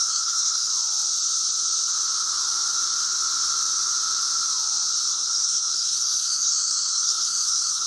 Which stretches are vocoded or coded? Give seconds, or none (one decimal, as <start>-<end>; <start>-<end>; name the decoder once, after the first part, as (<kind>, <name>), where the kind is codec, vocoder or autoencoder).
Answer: 0.0-0.7 (codec, SNAC); 5.1-7.9